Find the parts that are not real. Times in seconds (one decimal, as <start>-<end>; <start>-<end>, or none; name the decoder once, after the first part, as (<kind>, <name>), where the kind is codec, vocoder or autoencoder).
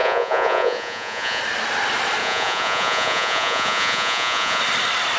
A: 0.0-1.4 (vocoder, Vocos); 2.2-4.6